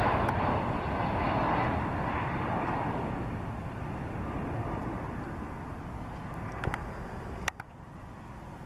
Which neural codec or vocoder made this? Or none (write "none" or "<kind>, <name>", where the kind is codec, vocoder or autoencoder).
none